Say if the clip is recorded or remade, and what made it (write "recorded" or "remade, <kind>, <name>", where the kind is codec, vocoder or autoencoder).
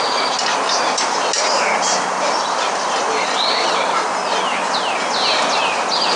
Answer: recorded